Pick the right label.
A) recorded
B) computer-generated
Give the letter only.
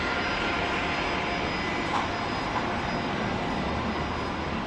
A